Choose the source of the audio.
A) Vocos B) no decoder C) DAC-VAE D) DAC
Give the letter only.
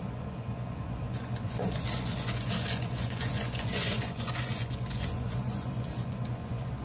A